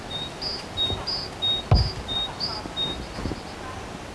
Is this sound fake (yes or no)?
no